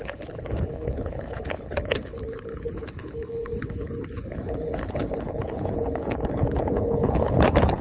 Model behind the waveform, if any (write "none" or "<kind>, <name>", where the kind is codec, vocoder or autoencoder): codec, HILCodec